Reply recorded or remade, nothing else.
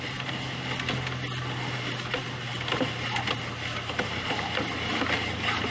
recorded